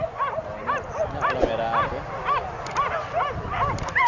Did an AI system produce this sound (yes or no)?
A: no